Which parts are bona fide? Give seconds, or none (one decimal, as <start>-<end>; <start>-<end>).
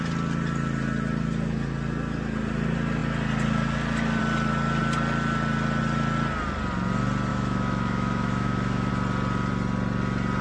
0.0-7.3; 8.9-10.4